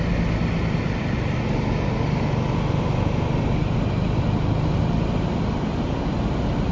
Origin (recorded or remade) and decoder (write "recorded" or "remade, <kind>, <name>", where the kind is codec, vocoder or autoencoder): recorded